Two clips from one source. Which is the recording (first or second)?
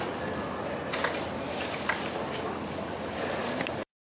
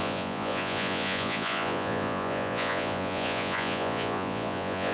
first